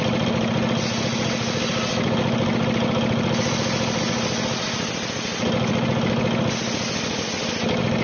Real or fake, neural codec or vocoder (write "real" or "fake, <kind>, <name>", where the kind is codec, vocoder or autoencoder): real